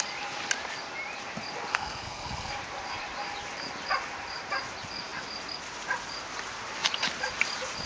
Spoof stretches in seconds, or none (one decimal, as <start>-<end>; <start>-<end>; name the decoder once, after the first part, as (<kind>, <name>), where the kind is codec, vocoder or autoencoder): 1.7-2.5 (codec, SNAC)